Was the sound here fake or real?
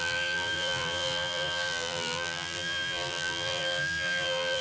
fake